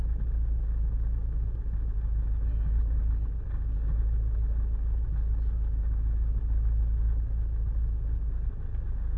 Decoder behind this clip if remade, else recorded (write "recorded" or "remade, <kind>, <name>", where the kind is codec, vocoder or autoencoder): recorded